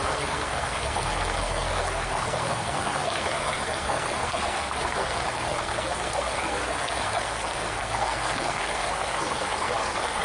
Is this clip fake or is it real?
fake